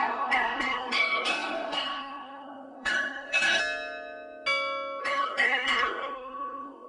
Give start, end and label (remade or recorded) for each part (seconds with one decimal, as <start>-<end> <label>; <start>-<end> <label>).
0.0-3.6 remade; 3.6-5.0 recorded; 5.0-6.9 remade

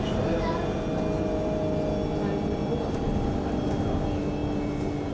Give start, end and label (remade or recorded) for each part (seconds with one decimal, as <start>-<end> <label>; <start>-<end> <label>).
0.0-5.1 recorded

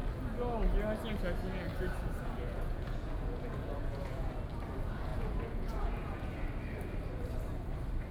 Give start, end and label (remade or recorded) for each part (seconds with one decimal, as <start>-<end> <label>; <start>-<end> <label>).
0.0-1.7 recorded; 1.7-4.3 remade; 4.3-5.1 recorded; 5.1-6.3 remade; 6.3-8.1 recorded

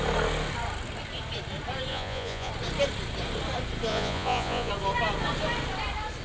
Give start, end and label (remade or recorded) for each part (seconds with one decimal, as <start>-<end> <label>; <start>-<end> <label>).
0.0-1.9 recorded; 1.9-2.5 remade; 2.5-3.9 recorded; 3.9-4.7 remade; 4.7-6.2 recorded